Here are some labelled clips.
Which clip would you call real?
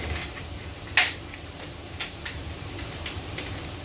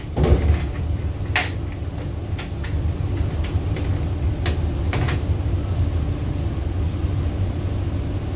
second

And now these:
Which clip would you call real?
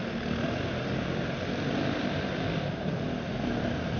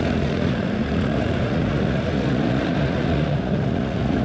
first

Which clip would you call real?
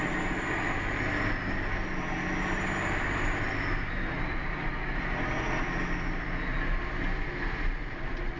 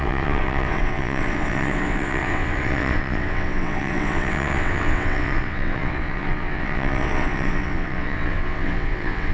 first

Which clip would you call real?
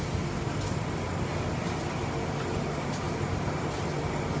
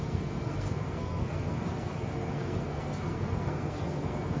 first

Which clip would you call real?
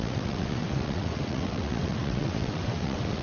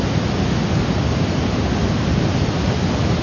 second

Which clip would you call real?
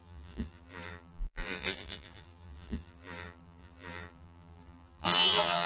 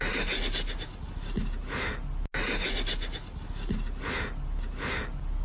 second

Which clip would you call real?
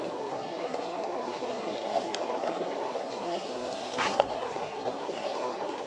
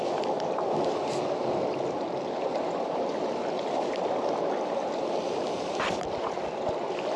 second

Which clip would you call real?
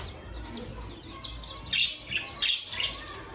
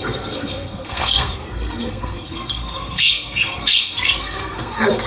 first